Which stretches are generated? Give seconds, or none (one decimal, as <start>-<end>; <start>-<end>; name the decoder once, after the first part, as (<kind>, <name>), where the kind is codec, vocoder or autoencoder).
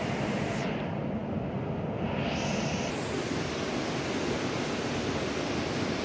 none